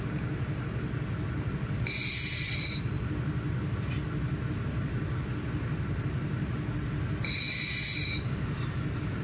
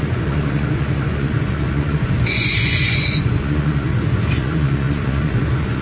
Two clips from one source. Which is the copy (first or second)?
second